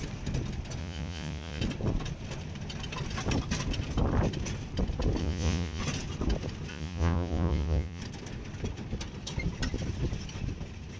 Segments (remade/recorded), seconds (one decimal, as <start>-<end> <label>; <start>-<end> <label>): 0.0-0.8 recorded; 0.8-1.6 remade; 1.6-5.2 recorded; 5.2-5.8 remade; 5.8-6.7 recorded; 6.7-8.0 remade; 8.0-11.0 recorded